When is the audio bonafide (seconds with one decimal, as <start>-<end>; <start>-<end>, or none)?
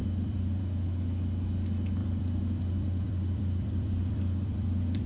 0.6-2.0